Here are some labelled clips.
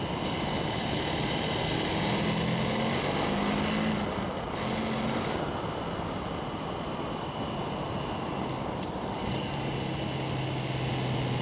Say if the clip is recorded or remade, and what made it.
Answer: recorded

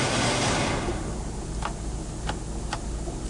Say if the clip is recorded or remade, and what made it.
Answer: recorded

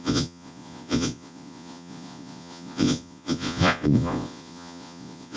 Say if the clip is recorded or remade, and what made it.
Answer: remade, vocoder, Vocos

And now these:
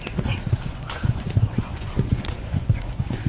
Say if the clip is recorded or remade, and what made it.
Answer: remade, vocoder, Vocos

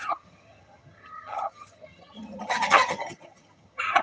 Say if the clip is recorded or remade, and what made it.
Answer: remade, vocoder, HiFi-GAN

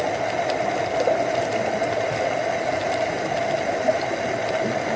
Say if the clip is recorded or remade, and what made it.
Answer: recorded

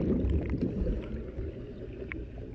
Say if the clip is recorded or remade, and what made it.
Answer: recorded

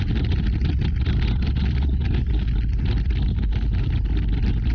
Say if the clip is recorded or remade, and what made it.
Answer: recorded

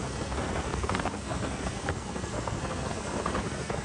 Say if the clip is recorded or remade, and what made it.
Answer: remade, codec, SNAC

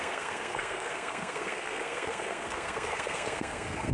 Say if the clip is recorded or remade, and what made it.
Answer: remade, codec, SNAC